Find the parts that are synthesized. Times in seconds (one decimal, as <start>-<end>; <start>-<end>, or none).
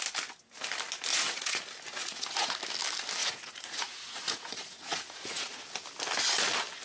1.1-1.6; 2.0-2.6; 3.2-5.6